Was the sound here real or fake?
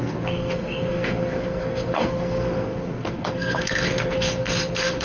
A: fake